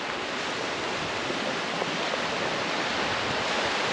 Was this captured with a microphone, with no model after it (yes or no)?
yes